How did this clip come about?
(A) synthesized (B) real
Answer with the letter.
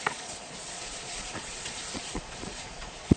A